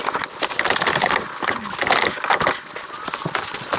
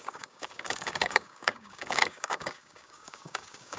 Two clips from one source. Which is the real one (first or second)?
first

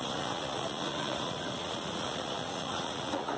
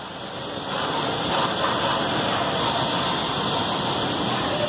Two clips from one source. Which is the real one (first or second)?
second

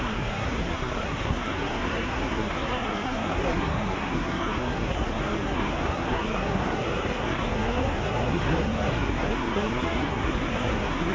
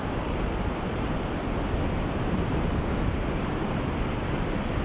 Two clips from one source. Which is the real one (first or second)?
second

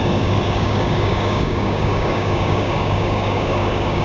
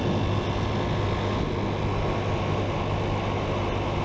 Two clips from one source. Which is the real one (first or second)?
second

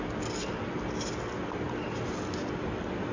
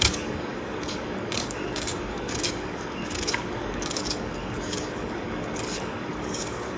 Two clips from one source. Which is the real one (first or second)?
first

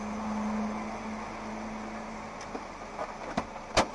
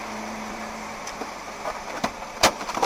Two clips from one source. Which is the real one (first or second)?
first